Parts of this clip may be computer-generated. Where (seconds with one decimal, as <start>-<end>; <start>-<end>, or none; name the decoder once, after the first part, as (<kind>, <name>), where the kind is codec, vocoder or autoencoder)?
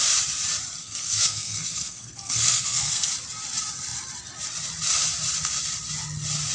0.8-3.1 (codec, SNAC)